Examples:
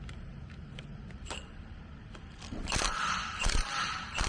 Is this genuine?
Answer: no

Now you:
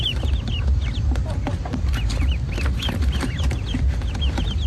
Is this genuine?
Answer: yes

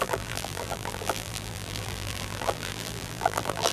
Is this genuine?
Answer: no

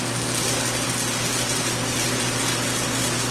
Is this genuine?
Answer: yes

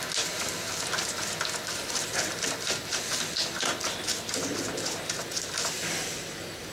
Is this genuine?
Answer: yes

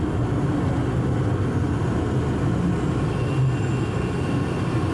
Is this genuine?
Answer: yes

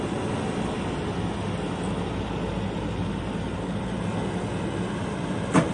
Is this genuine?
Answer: yes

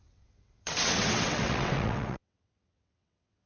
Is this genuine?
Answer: no